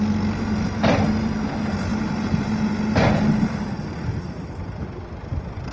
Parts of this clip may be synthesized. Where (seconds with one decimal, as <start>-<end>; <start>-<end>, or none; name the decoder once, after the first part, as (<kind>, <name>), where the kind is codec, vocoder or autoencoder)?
none